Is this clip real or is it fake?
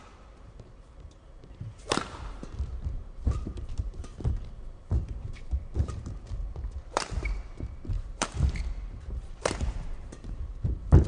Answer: fake